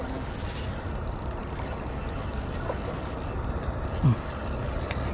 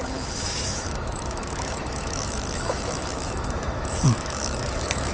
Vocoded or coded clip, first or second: second